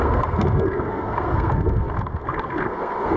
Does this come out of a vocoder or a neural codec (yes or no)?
yes